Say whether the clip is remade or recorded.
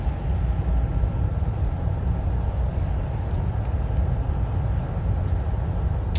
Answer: recorded